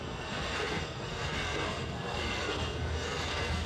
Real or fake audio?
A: fake